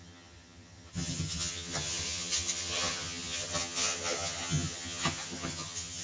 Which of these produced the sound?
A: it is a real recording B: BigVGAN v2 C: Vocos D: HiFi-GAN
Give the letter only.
D